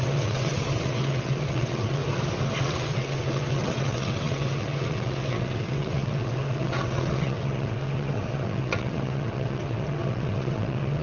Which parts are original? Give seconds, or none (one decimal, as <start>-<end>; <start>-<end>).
2.0-2.6